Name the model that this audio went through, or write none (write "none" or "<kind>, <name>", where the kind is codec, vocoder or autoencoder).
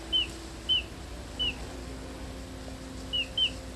none